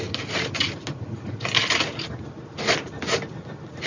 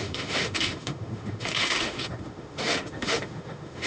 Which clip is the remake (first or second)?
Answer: second